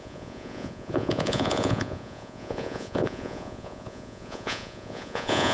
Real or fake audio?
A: fake